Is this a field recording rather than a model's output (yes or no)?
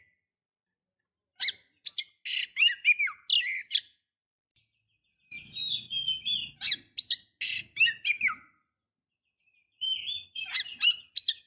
yes